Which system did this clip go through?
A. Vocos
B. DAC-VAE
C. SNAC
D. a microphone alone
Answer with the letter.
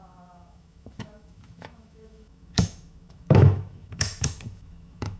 B